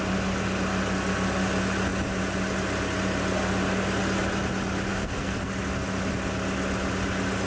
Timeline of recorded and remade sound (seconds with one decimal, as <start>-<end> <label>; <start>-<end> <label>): 0.0-4.9 recorded; 4.9-5.5 remade; 5.5-7.5 recorded